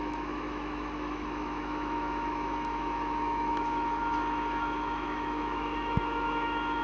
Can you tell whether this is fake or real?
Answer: fake